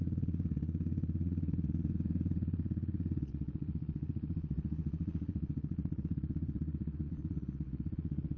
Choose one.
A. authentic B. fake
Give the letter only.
B